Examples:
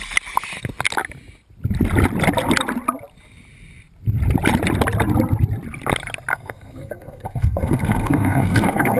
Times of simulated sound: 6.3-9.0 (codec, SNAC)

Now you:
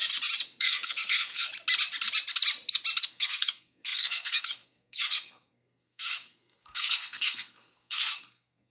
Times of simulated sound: 0.6-1.5 (codec, SNAC); 3.1-8.7

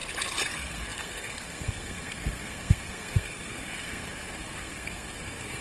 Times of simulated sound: 0.5-5.6 (codec, SNAC)